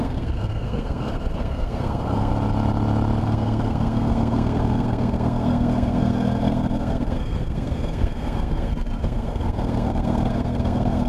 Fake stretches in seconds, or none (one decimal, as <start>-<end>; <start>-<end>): 0.0-2.3; 3.2-11.1